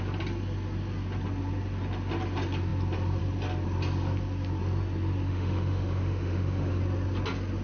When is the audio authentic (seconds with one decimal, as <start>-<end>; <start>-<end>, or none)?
0.0-5.3; 6.8-7.6